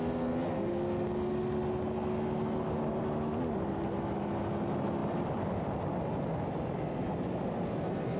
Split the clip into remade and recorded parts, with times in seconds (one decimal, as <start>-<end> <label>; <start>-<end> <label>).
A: 0.0-8.2 recorded